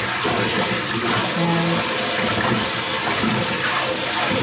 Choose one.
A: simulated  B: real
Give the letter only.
B